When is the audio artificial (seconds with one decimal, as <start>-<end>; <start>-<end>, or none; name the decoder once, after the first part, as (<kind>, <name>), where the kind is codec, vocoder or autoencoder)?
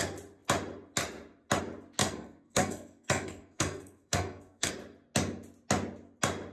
2.0-4.7 (codec, SNAC)